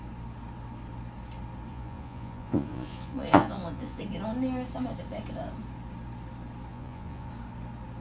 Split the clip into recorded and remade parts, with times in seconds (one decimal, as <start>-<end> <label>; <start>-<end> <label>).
0.0-1.7 recorded; 1.7-4.0 remade; 4.0-6.7 recorded; 6.7-7.3 remade; 7.3-8.0 recorded